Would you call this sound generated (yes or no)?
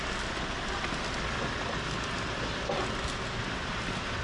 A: no